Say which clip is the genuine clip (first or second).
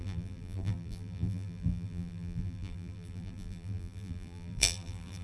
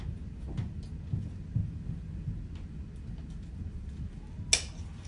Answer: second